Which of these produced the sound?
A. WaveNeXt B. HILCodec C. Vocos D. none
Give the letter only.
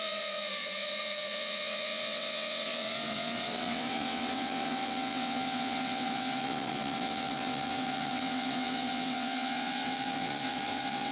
A